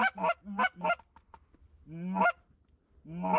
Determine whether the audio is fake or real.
real